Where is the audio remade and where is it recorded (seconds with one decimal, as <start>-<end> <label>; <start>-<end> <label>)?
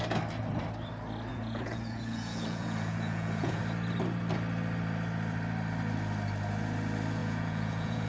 0.0-1.3 recorded; 1.3-3.6 remade; 3.6-7.2 recorded; 7.2-8.1 remade